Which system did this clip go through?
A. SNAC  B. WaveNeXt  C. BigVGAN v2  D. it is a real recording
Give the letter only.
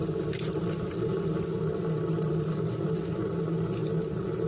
D